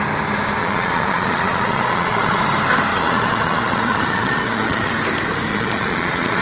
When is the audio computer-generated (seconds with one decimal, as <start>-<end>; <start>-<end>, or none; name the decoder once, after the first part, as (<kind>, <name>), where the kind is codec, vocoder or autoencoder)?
0.6-2.4 (vocoder, Vocos); 2.9-4.9; 5.5-6.4